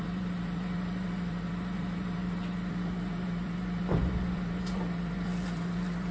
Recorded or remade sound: remade